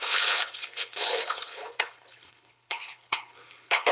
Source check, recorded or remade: remade